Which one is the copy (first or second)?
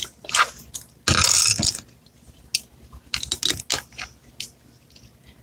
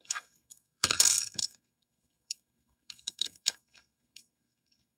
second